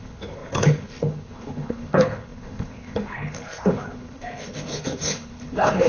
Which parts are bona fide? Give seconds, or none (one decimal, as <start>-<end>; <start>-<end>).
none